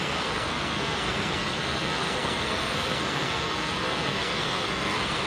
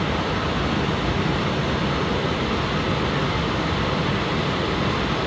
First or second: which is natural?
second